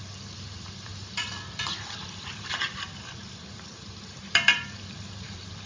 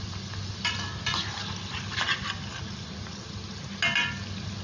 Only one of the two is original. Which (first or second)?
second